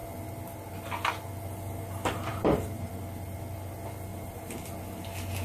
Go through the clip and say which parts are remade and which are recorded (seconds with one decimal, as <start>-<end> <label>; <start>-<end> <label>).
0.0-2.3 recorded; 2.3-2.9 remade; 2.9-4.1 recorded; 4.1-4.7 remade; 4.7-5.4 recorded